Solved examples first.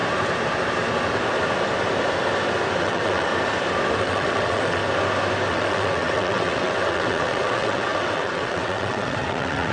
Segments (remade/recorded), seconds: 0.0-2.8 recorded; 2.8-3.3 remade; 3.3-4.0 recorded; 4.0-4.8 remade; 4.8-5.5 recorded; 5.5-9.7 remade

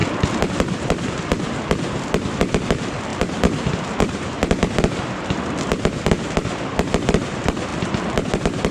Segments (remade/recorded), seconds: 0.0-7.7 recorded; 7.7-8.7 remade

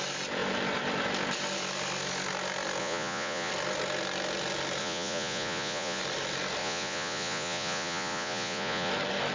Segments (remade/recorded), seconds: 0.0-2.8 recorded; 2.8-3.5 remade; 3.5-4.8 recorded; 4.8-6.0 remade; 6.0-6.6 recorded; 6.6-8.9 remade; 8.9-9.3 recorded

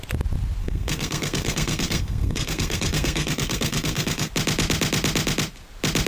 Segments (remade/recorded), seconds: 0.0-0.6 recorded; 0.6-4.3 remade; 4.3-6.1 recorded

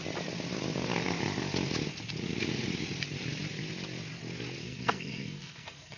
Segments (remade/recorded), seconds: 0.0-4.6 recorded; 4.6-6.0 remade